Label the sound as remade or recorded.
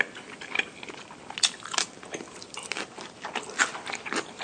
recorded